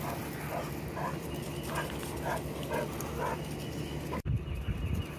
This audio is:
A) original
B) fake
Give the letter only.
A